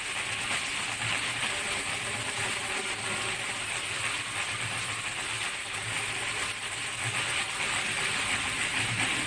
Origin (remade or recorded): recorded